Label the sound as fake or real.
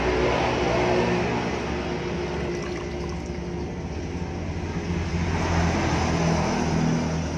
real